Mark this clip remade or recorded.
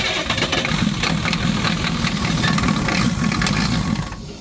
recorded